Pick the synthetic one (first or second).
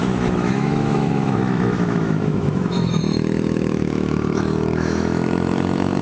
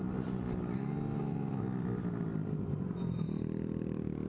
first